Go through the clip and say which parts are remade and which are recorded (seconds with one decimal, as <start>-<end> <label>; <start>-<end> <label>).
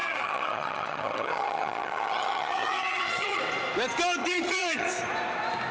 0.0-3.4 remade; 3.4-4.2 recorded; 4.2-4.9 remade; 4.9-5.7 recorded